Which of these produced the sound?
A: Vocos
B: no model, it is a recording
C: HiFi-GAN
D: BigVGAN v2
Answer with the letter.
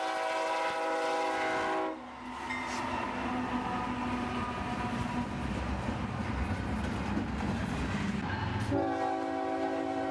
B